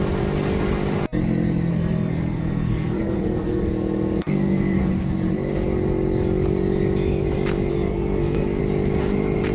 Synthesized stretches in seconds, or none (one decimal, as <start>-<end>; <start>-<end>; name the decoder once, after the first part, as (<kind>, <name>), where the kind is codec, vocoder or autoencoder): 1.7-3.7 (codec, SNAC); 4.2-4.9; 7.7-8.6